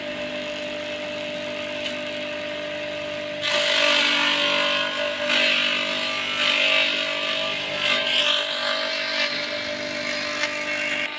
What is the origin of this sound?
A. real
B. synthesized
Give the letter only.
A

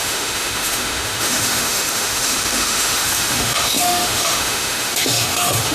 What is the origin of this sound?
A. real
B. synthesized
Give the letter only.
B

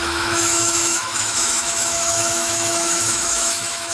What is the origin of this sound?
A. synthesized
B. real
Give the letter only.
A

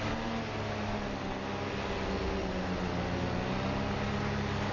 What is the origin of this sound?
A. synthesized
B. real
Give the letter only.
B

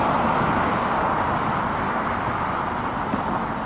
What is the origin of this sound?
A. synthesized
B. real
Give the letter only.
B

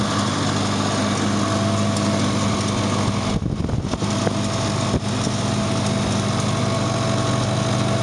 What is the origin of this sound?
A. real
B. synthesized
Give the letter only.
A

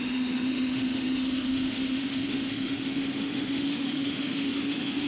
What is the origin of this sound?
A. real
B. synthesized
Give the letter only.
B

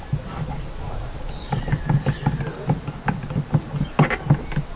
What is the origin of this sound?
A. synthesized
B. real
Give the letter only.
B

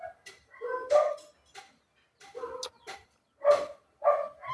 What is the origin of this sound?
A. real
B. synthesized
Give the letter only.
A